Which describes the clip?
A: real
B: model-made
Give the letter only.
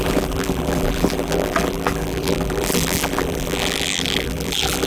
B